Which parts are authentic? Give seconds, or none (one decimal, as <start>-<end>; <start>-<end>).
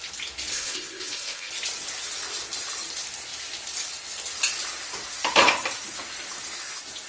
0.0-0.5; 1.5-7.1